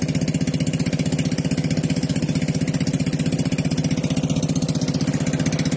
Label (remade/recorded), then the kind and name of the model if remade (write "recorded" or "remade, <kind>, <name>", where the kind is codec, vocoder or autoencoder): recorded